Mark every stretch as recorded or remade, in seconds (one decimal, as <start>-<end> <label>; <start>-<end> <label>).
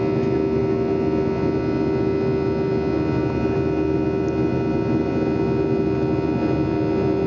0.0-7.3 recorded